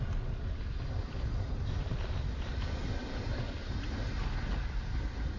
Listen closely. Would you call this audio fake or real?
real